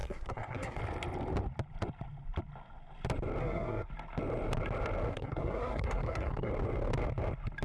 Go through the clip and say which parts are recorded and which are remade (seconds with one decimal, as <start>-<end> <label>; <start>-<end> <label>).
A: 0.0-0.8 remade; 0.8-3.4 recorded; 3.4-3.9 remade; 3.9-5.1 recorded; 5.1-6.5 remade; 6.5-7.6 recorded